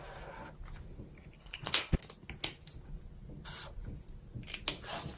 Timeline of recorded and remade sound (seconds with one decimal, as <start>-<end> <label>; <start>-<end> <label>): 0.0-1.4 recorded; 1.4-2.0 remade; 2.0-5.2 recorded